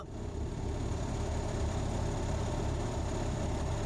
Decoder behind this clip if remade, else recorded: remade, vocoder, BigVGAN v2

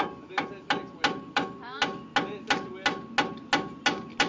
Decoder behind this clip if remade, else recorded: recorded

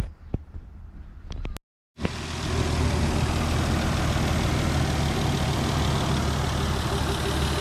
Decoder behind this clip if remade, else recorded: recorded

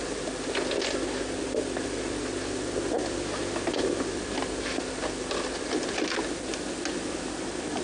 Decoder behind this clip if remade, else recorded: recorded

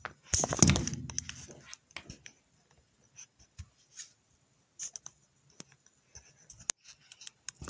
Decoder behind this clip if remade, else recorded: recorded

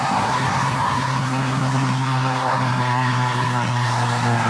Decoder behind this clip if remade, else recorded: remade, codec, SNAC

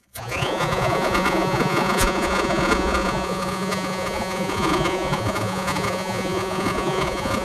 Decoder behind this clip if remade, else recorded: remade, vocoder, Vocos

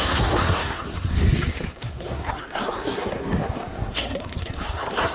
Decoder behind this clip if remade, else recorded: remade, codec, SNAC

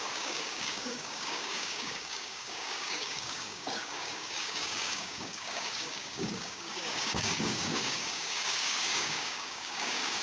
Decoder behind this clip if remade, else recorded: remade, codec, DAC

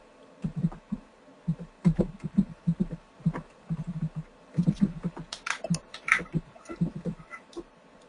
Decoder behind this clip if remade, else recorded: remade, vocoder, BigVGAN v2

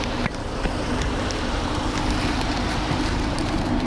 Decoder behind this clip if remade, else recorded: remade, vocoder, BigVGAN v2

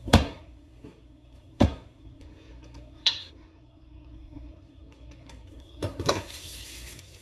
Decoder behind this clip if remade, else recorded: remade, codec, SNAC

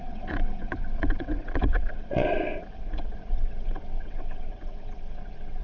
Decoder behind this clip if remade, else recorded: remade, vocoder, WaveNeXt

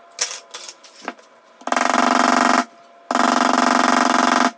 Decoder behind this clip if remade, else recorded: recorded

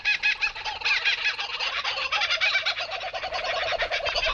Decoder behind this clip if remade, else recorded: recorded